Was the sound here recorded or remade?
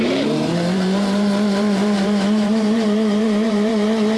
remade